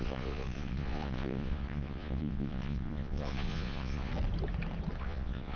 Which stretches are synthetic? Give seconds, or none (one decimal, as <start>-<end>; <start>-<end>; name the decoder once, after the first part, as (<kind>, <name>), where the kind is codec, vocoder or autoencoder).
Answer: 0.0-4.1 (vocoder, Vocos); 5.0-5.6